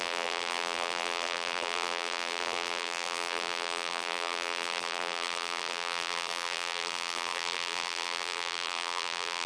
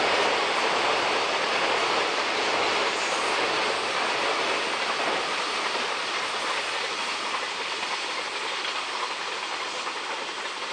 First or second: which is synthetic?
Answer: first